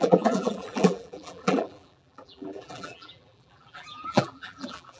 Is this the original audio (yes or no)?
no